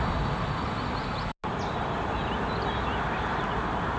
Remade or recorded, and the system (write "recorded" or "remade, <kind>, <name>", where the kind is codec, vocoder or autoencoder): recorded